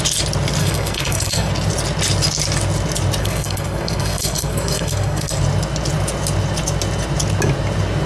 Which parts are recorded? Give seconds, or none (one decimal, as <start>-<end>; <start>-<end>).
0.0-0.6; 1.5-3.2; 5.4-8.1